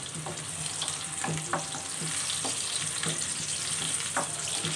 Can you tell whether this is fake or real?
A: real